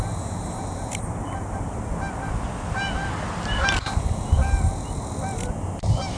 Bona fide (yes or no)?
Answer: yes